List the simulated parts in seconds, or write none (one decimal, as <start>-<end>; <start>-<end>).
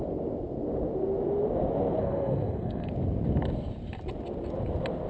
2.0-2.9